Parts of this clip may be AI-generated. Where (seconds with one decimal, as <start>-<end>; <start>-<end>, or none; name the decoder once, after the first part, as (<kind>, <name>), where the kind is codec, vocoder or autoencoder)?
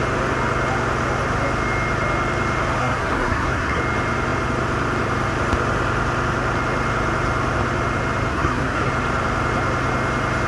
2.8-3.8 (codec, SNAC); 8.3-8.9